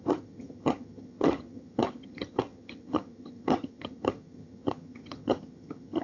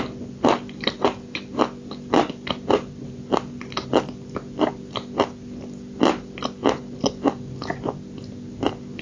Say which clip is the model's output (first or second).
first